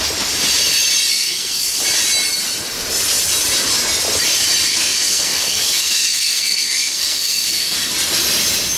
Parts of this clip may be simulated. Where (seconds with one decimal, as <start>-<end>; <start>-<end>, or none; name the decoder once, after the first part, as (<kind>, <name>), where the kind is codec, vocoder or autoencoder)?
1.1-1.8 (codec, SNAC); 4.7-7.9